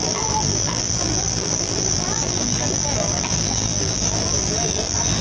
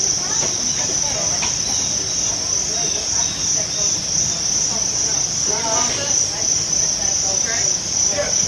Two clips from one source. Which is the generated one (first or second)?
first